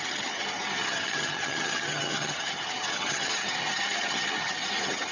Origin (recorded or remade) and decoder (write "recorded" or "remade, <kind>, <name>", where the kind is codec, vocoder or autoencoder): remade, vocoder, HiFi-GAN